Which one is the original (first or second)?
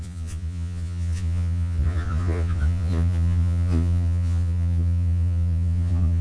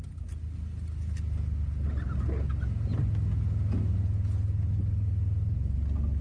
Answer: second